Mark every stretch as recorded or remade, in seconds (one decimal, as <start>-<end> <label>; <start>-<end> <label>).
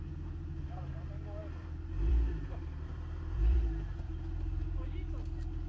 0.0-1.4 recorded; 1.4-4.8 remade; 4.8-5.7 recorded